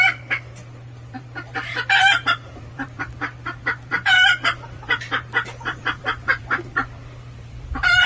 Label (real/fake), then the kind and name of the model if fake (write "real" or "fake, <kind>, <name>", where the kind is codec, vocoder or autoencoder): fake, vocoder, BigVGAN v2